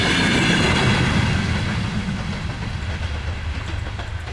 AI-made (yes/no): no